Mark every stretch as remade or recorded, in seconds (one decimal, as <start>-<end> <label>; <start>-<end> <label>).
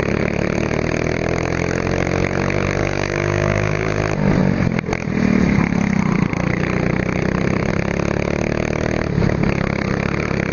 0.0-2.8 recorded; 2.8-4.0 remade; 4.0-10.5 recorded